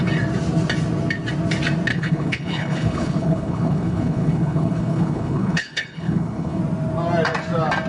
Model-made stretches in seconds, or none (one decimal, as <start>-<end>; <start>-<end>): 1.9-6.6